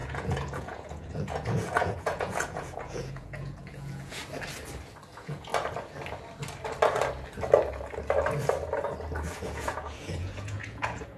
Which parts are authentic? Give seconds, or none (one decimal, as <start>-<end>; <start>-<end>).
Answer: 4.2-5.1; 5.5-9.3